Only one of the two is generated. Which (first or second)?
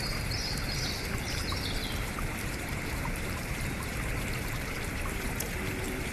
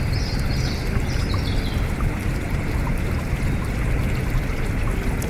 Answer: first